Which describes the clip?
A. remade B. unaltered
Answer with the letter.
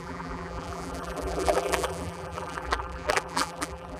A